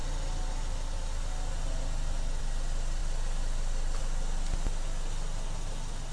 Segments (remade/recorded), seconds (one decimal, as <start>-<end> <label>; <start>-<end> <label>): 0.0-6.1 recorded